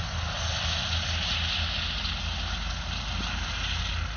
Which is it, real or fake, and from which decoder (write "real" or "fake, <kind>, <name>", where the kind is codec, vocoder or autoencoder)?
real